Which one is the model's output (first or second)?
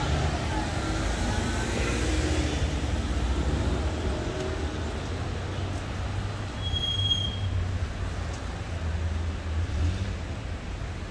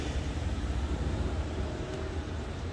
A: second